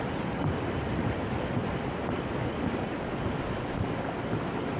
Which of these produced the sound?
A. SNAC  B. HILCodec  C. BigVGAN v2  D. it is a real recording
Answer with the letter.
D